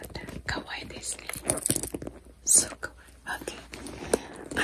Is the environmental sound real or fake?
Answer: real